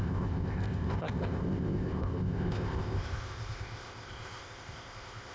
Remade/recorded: remade